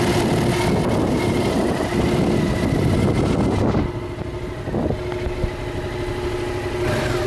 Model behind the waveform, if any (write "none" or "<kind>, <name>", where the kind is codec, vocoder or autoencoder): none